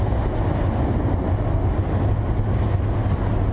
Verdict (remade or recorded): recorded